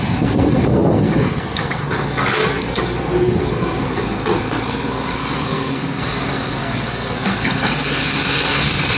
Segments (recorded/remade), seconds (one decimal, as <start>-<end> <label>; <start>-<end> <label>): 0.0-9.0 remade